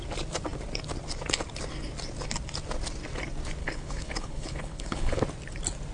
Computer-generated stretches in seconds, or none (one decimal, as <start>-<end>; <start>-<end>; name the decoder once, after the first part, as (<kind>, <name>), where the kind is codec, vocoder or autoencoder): 3.6-5.2 (codec, HILCodec)